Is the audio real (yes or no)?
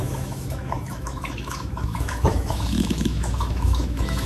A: no